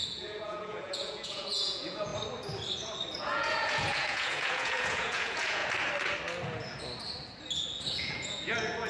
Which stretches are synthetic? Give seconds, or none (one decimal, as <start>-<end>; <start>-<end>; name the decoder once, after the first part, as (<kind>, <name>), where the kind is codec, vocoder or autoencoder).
0.0-2.1 (vocoder, Vocos); 3.2-5.6; 7.8-8.9